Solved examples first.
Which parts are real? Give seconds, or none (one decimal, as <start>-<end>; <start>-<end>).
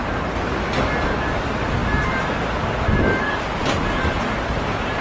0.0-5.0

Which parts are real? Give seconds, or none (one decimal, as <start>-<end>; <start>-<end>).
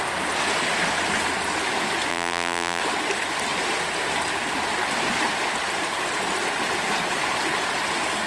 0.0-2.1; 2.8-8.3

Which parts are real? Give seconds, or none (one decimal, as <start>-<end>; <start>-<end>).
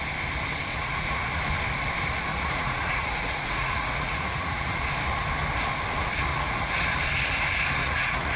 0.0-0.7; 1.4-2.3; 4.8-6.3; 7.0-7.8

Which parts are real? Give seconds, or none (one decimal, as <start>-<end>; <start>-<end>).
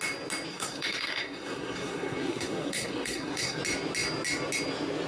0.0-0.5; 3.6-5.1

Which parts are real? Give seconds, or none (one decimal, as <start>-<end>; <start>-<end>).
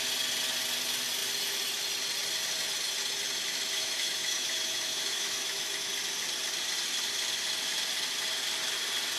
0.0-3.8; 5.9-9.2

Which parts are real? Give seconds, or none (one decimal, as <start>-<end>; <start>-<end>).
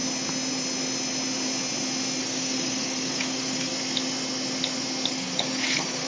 0.0-2.2; 3.7-5.1